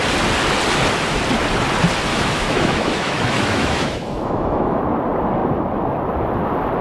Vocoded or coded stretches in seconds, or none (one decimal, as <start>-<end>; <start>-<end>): 2.1-4.8